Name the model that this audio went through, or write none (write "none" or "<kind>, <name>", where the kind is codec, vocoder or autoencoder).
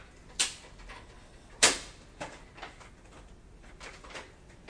none